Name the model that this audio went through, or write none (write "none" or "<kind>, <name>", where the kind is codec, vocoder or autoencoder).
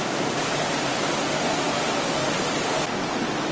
none